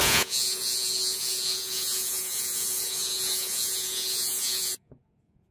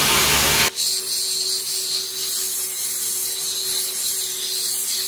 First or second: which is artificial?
first